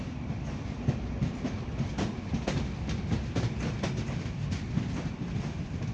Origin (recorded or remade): remade